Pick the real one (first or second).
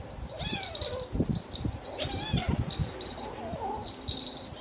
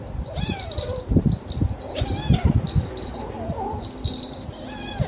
second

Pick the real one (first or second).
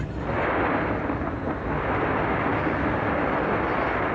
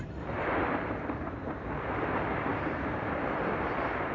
first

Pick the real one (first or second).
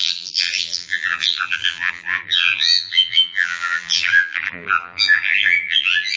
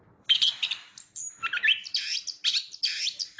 second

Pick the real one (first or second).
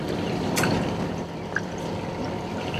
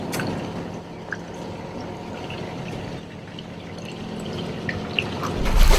second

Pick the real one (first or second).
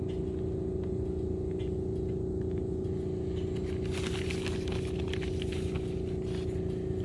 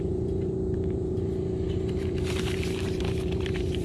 first